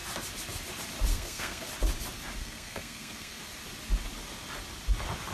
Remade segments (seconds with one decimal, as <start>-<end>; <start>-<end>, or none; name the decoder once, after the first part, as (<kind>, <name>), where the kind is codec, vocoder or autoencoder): 1.1-1.7 (codec, SNAC); 2.4-3.4